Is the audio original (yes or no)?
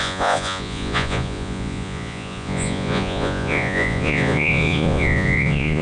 no